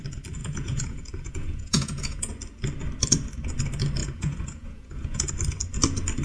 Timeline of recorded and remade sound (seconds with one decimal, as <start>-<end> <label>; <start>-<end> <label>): 0.0-0.4 recorded; 0.4-2.3 remade; 2.3-4.0 recorded; 4.0-5.3 remade; 5.3-6.2 recorded

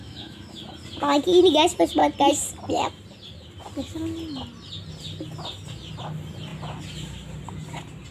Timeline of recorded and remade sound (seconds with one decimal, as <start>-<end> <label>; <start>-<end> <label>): 0.0-0.6 remade; 0.6-8.1 recorded

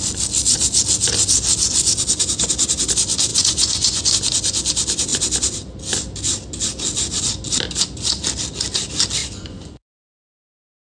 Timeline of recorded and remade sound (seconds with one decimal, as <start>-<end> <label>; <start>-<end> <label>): 0.0-3.3 recorded; 3.3-4.1 remade; 4.1-9.2 recorded; 9.2-10.9 remade

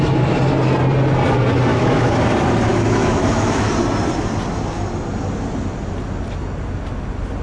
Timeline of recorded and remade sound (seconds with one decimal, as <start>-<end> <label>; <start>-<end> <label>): 0.0-1.7 recorded; 1.7-2.3 remade; 2.3-2.7 recorded; 2.7-3.7 remade; 3.7-7.4 recorded